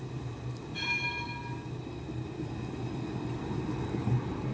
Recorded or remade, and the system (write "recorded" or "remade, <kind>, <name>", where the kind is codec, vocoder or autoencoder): recorded